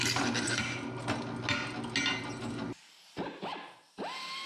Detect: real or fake real